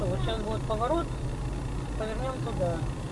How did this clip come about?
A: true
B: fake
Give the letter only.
A